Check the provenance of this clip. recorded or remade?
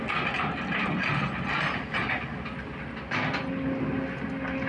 recorded